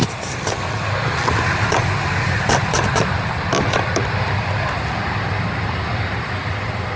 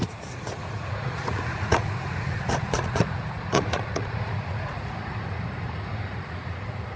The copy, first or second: second